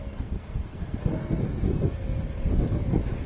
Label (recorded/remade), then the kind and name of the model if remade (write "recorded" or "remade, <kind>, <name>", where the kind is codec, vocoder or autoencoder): remade, codec, SNAC